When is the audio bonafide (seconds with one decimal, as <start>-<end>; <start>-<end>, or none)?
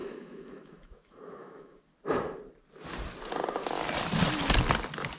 1.8-5.2